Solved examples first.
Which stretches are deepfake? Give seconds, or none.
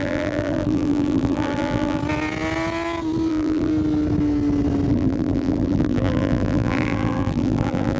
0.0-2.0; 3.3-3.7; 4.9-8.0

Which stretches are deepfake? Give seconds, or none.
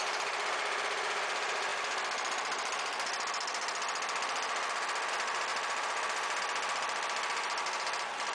1.7-5.1; 5.5-6.4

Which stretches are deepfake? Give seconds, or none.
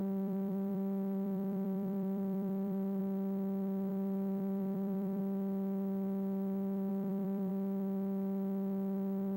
0.0-3.0; 3.9-5.2; 6.9-7.5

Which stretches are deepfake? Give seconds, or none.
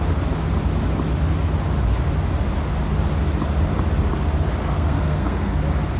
4.6-5.6